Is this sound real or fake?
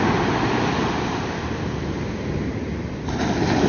real